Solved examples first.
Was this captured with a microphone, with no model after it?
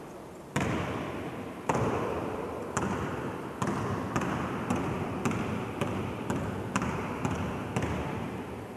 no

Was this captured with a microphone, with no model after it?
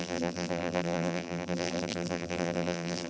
no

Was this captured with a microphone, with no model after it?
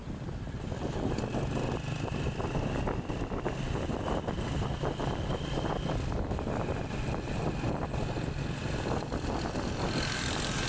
yes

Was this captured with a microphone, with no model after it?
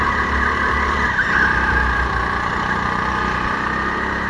yes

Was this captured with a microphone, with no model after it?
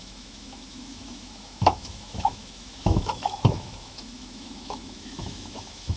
no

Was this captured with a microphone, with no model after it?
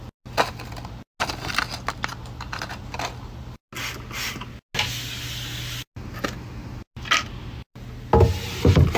yes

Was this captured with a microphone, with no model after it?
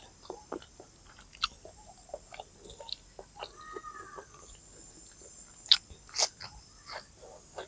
yes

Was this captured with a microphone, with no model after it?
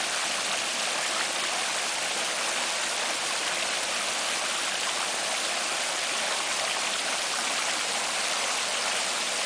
yes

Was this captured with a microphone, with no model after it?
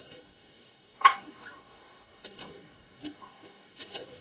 no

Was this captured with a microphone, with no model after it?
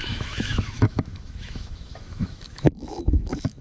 no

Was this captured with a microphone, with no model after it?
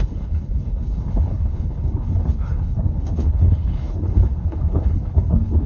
no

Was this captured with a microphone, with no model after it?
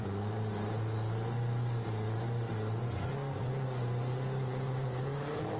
yes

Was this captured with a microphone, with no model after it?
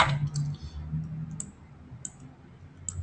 yes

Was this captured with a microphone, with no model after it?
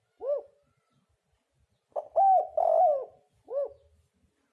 yes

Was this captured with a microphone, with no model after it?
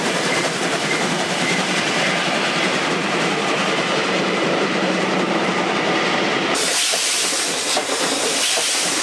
no